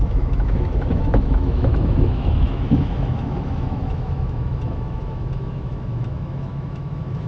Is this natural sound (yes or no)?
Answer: no